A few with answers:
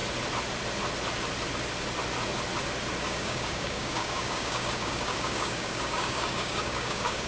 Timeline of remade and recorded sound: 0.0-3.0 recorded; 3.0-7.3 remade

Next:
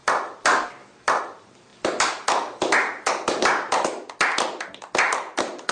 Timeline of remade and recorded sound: 0.0-5.7 recorded

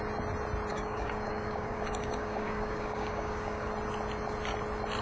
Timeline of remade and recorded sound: 0.0-0.7 recorded; 0.7-3.7 remade; 3.7-5.0 recorded

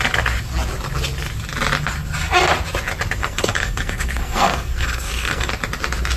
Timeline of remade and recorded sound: 0.0-3.2 recorded; 3.2-5.5 remade; 5.5-6.2 recorded

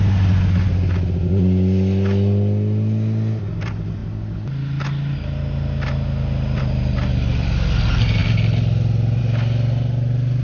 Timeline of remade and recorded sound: 0.0-10.4 recorded

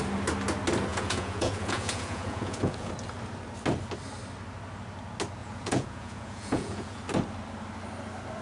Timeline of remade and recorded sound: 0.0-0.9 recorded; 0.9-2.9 remade; 2.9-5.4 recorded; 5.4-7.0 remade; 7.0-8.4 recorded

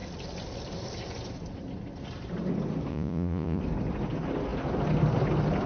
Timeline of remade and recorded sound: 0.0-2.9 recorded; 2.9-3.6 remade; 3.6-5.7 recorded

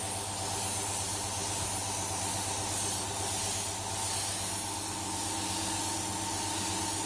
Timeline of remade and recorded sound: 0.0-7.1 recorded